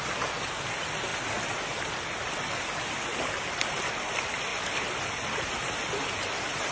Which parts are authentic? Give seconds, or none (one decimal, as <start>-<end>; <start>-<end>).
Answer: 0.0-6.7